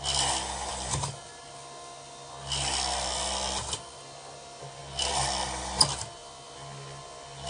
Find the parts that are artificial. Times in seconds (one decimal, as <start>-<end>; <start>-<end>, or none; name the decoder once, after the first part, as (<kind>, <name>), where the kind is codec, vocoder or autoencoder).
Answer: none